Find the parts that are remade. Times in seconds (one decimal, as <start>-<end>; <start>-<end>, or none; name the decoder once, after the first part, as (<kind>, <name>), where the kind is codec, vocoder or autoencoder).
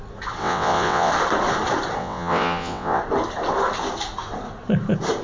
0.4-1.1 (vocoder, WaveNeXt); 2.0-3.0